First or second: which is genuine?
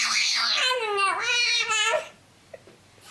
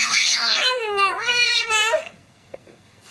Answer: first